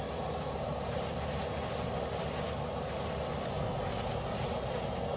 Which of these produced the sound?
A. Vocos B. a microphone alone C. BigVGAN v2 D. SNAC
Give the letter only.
B